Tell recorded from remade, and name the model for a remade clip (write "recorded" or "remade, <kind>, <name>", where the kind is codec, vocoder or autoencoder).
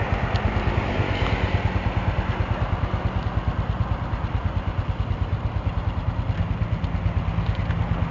recorded